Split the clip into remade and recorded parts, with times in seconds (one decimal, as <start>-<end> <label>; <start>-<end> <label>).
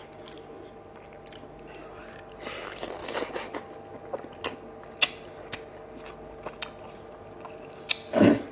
0.0-8.5 recorded